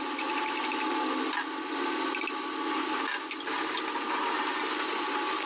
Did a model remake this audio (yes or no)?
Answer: no